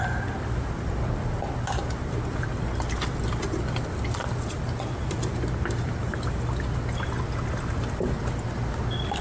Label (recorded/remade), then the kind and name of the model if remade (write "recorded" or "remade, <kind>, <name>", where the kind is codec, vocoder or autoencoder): recorded